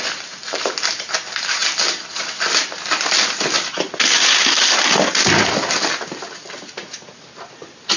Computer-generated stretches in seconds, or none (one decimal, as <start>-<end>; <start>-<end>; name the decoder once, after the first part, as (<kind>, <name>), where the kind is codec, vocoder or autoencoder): none